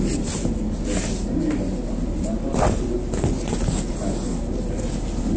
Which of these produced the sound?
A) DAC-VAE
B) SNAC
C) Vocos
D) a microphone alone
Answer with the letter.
D